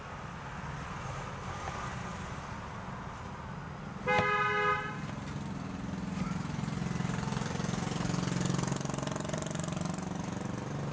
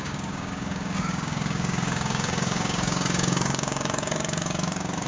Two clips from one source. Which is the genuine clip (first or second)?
first